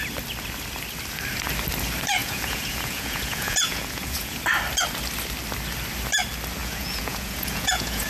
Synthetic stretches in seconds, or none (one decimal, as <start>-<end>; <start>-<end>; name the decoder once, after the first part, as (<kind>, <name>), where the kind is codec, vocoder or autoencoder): 2.2-4.4 (vocoder, Vocos); 6.6-8.1